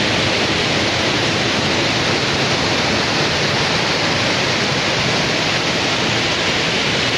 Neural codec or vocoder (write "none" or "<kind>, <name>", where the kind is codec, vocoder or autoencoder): none